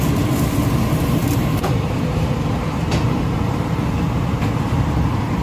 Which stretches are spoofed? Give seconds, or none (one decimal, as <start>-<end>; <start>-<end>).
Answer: 1.2-3.9